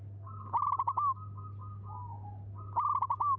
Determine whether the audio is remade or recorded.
recorded